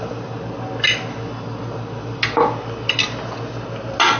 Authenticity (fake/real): real